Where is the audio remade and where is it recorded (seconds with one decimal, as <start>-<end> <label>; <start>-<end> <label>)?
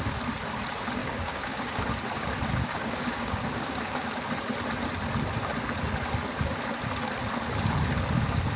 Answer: 0.0-1.0 recorded; 1.0-1.9 remade; 1.9-2.7 recorded; 2.7-4.1 remade; 4.1-8.6 recorded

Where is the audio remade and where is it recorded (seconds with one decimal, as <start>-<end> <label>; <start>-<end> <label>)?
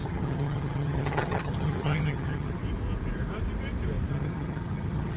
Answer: 0.0-2.6 remade; 2.6-4.1 recorded; 4.1-5.2 remade